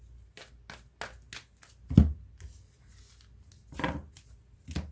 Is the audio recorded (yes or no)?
yes